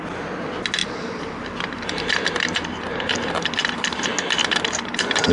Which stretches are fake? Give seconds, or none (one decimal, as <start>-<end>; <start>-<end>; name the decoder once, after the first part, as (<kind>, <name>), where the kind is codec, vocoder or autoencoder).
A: 0.8-3.9 (vocoder, BigVGAN v2)